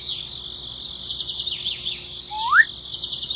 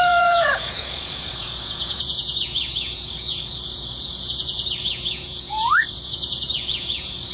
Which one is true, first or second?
first